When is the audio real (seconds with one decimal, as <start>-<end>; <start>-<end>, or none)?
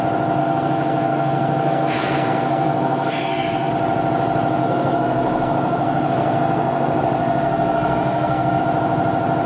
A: 0.0-0.4; 3.7-4.6; 8.6-9.5